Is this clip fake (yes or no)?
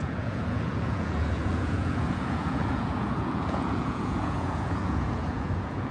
yes